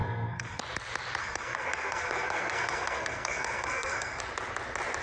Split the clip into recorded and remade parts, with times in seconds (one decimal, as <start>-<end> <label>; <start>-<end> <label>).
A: 0.0-0.6 remade; 0.6-1.2 recorded; 1.2-4.2 remade; 4.2-5.0 recorded